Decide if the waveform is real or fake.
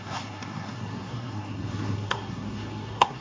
fake